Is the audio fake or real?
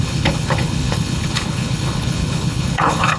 fake